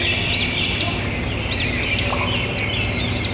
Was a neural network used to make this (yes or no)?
no